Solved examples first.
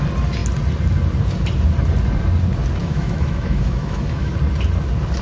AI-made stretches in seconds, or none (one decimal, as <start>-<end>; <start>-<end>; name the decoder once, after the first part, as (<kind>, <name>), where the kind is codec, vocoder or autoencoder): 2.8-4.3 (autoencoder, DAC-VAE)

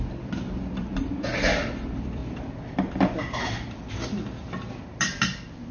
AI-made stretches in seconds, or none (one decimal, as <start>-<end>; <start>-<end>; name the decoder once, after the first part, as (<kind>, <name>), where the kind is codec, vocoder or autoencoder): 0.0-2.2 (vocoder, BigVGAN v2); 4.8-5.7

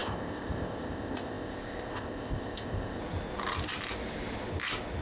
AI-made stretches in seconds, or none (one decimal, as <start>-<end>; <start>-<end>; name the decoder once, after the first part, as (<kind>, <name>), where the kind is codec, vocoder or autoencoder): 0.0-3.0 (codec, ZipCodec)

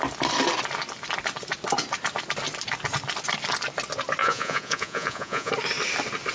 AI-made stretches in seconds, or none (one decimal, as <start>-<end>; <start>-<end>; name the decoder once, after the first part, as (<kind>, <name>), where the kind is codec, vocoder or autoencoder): 4.2-5.5 (vocoder, Vocos)